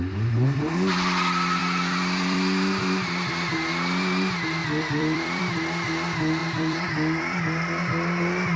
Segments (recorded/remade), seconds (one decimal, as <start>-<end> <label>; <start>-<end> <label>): 0.0-1.6 recorded; 1.6-3.7 remade; 3.7-4.6 recorded; 4.6-5.4 remade; 5.4-6.4 recorded; 6.4-7.4 remade; 7.4-8.6 recorded